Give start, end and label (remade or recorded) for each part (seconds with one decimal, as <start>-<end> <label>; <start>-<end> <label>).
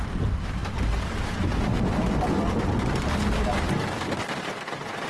0.0-5.1 recorded